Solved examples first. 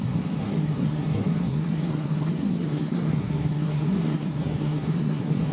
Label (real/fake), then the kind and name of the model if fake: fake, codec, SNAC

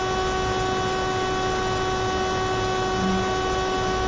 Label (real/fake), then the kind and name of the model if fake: real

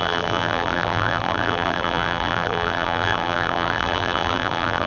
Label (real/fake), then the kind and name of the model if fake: fake, vocoder, BigVGAN v2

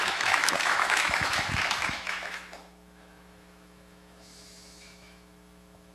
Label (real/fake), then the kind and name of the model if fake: fake, autoencoder, DAC-VAE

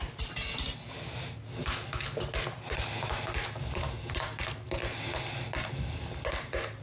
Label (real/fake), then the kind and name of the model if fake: real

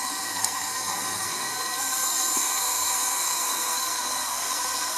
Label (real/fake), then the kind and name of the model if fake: fake, codec, SNAC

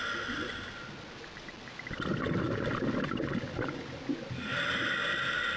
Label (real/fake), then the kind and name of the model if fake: real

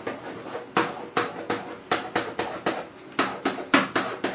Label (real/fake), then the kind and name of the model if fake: real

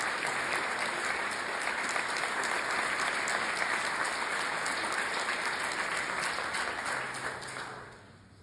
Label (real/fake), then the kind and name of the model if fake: real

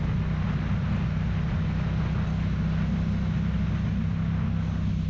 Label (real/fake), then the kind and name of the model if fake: real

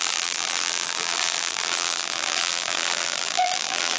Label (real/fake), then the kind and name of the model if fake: fake, vocoder, BigVGAN v2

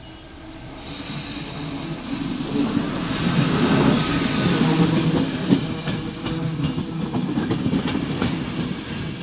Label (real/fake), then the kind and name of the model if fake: real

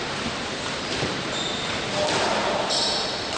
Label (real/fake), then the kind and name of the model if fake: fake, vocoder, BigVGAN v2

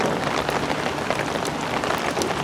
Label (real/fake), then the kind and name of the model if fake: fake, vocoder, BigVGAN v2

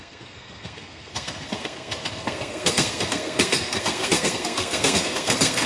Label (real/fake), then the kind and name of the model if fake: fake, codec, SNAC